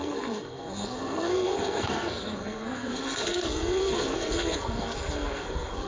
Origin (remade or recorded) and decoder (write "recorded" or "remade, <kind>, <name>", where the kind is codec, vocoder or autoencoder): remade, codec, SNAC